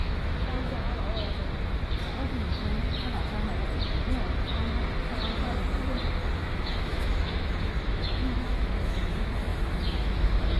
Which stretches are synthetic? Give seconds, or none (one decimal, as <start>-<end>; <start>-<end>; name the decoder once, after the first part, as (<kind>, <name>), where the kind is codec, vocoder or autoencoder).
0.0-1.4 (autoencoder, DAC-VAE); 6.3-10.6